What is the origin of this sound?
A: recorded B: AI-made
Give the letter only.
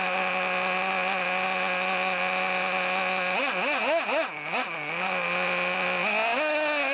A